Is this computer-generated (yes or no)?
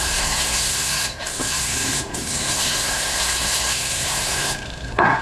yes